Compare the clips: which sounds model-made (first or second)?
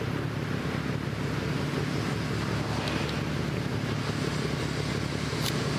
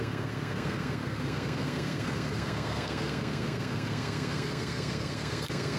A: second